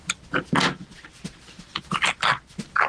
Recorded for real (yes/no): yes